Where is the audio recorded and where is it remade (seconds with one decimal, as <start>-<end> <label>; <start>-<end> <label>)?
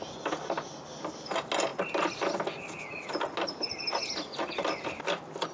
0.0-5.5 recorded